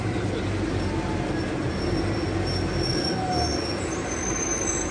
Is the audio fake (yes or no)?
no